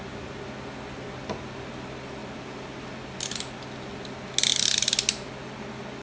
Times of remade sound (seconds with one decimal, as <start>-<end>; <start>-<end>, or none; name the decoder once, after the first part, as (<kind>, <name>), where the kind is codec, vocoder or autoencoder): none